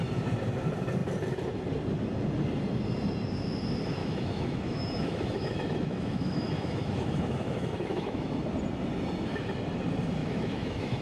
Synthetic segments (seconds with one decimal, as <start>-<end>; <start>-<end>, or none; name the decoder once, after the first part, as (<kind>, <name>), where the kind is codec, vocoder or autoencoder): 4.0-8.4 (autoencoder, DAC-VAE); 10.2-11.0